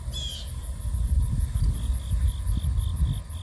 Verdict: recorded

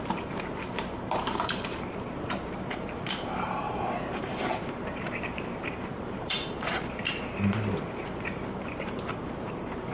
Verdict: remade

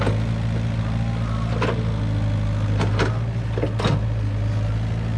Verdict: recorded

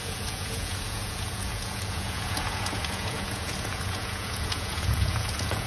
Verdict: remade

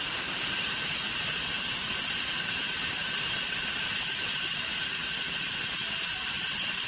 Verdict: remade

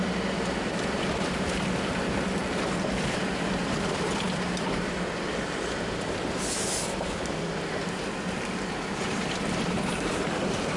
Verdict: remade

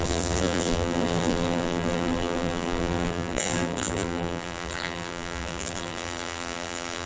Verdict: remade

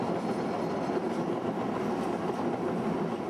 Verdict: recorded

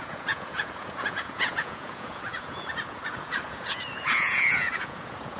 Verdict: remade